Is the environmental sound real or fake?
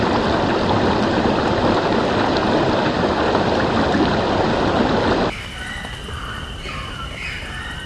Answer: real